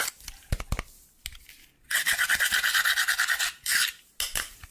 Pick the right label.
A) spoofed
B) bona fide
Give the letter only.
B